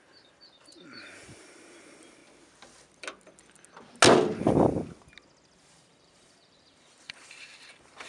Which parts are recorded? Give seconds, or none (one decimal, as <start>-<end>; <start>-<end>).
2.2-5.7